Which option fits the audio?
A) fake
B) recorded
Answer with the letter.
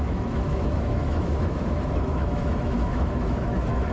A